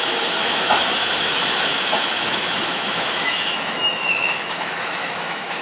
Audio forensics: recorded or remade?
remade